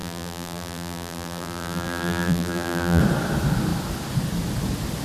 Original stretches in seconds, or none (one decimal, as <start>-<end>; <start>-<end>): 3.0-5.0